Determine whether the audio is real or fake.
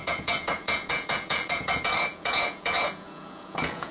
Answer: fake